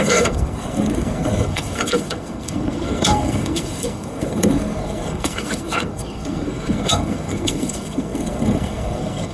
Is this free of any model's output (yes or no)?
no